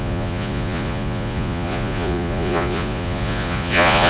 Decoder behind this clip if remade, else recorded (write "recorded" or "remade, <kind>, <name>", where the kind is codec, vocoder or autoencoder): remade, vocoder, Vocos